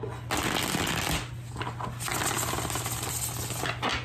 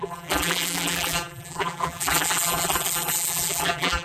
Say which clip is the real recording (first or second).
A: first